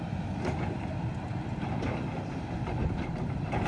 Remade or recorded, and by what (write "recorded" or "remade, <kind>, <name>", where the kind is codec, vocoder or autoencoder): remade, vocoder, BigVGAN v2